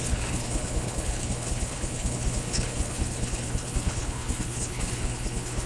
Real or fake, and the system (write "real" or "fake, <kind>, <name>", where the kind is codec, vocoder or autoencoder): fake, codec, HILCodec